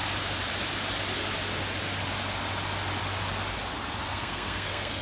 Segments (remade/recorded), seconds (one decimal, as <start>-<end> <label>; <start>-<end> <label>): 0.0-4.1 recorded; 4.1-5.0 remade